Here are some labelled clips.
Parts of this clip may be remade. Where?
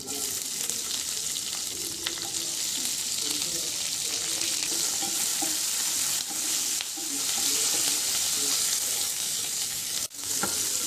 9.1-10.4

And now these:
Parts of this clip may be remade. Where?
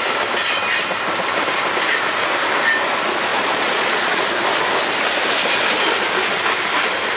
3.3-4.2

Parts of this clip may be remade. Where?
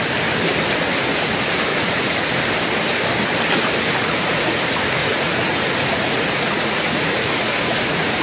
1.7-2.3; 4.0-4.6; 5.0-8.2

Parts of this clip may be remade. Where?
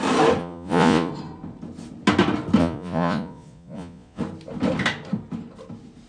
0.4-1.1; 2.6-4.2